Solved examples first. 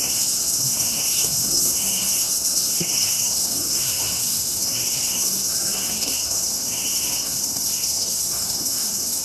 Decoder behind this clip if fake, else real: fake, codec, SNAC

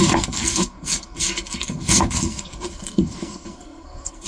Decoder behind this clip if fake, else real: fake, codec, SNAC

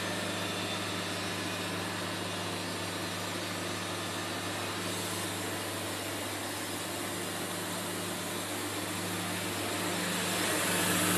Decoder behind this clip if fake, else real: real